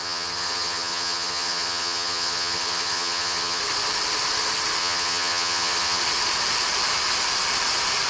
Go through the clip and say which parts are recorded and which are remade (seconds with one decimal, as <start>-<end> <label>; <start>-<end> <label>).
0.0-3.6 remade; 3.6-4.8 recorded; 4.8-6.0 remade; 6.0-8.1 recorded